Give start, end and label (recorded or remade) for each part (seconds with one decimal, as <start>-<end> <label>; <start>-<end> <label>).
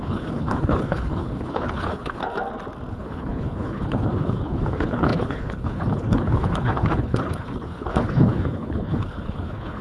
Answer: 0.0-2.2 remade; 2.2-2.9 recorded; 2.9-9.8 remade